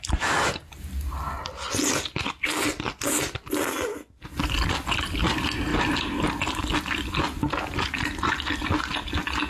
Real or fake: real